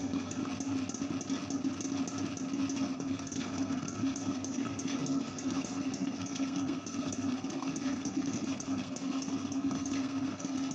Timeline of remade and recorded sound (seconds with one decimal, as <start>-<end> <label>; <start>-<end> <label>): 0.0-0.4 remade; 0.4-2.9 recorded; 2.9-10.7 remade